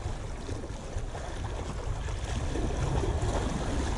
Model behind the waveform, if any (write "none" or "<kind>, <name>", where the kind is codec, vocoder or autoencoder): none